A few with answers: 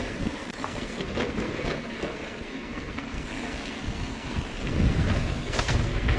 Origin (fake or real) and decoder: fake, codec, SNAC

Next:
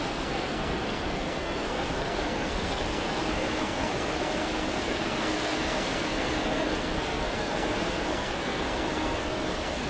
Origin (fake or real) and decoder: fake, codec, SNAC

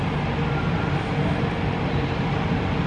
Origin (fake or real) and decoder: real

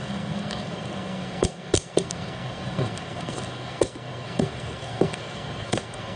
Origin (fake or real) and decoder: fake, codec, SNAC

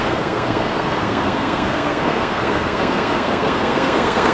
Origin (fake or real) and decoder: fake, codec, SNAC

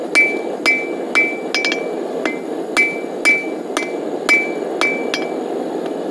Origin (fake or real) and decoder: real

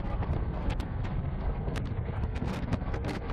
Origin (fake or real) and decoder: fake, codec, SNAC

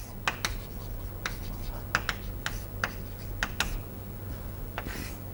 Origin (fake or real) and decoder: real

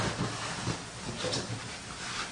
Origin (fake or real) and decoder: real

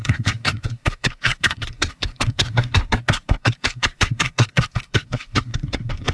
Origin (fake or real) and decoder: fake, codec, SNAC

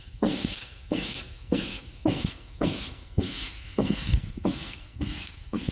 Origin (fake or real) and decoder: fake, codec, SNAC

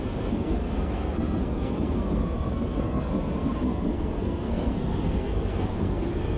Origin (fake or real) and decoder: fake, codec, SNAC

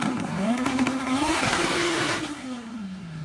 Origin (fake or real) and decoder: fake, codec, SNAC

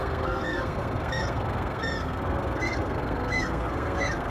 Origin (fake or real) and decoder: fake, codec, SNAC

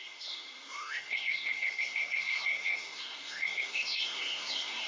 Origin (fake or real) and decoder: fake, codec, SNAC